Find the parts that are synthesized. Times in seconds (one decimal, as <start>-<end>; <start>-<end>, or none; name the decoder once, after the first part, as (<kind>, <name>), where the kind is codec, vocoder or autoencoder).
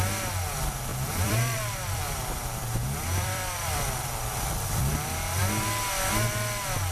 0.9-4.9 (vocoder, BigVGAN v2)